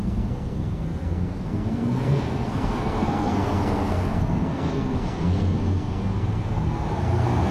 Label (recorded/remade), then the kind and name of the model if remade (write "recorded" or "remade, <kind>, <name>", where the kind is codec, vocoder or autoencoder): remade, codec, SNAC